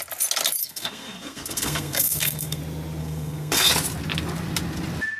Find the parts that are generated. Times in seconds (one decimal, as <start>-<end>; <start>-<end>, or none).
0.6-2.6; 3.0-3.7